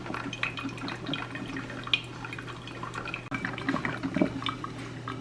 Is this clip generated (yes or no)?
no